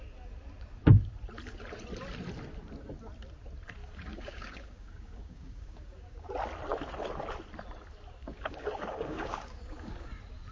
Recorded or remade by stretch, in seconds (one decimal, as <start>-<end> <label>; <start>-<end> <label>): 0.0-3.8 recorded; 3.8-6.3 remade; 6.3-8.2 recorded; 8.2-10.1 remade; 10.1-10.5 recorded